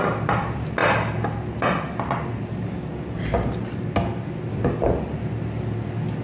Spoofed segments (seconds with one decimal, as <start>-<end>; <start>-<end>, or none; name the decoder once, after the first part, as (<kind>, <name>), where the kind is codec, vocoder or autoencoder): none